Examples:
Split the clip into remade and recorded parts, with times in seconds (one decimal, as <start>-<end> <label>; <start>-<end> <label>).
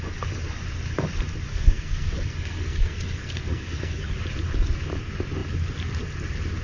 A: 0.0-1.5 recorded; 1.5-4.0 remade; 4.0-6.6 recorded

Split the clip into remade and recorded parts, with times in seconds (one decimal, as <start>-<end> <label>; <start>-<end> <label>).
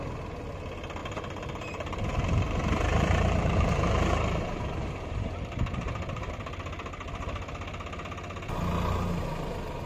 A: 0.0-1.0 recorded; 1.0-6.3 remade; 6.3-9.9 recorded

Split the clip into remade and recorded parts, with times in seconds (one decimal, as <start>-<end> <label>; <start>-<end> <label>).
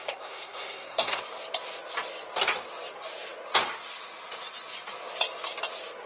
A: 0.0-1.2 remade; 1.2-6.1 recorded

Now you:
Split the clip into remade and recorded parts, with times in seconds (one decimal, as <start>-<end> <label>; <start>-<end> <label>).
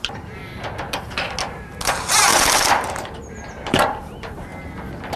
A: 0.0-0.4 remade; 0.4-1.9 recorded; 1.9-4.5 remade; 4.5-5.2 recorded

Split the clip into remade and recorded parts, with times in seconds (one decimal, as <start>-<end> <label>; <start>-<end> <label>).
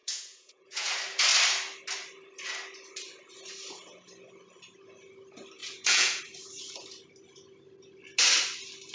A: 0.0-0.9 remade; 0.9-5.6 recorded; 5.6-6.2 remade; 6.2-8.9 recorded